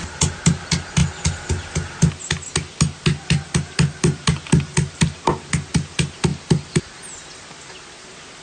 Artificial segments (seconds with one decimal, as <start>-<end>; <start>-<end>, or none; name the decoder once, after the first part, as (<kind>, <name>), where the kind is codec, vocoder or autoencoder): none